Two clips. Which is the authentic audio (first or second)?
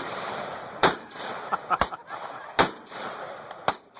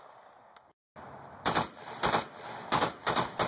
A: second